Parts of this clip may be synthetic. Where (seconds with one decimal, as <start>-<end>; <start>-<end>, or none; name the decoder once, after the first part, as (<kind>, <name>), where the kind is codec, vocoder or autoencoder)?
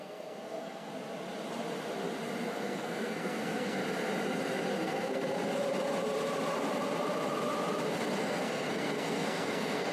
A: 0.0-0.9 (codec, SNAC); 2.5-3.8; 4.7-5.4; 8.2-9.9